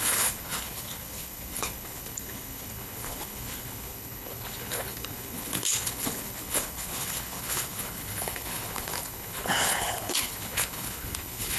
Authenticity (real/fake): fake